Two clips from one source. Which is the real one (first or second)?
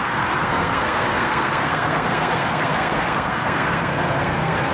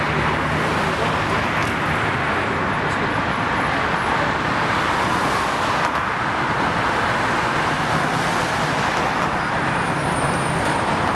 second